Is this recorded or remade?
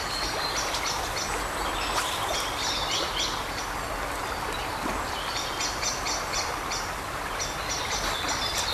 recorded